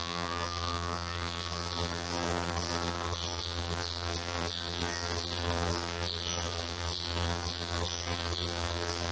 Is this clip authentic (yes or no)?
no